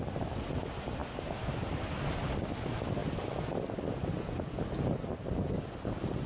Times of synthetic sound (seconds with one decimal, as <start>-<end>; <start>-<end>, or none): none